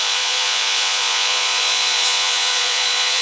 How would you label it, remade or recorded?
remade